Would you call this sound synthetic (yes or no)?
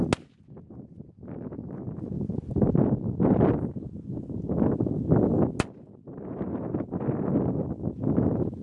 no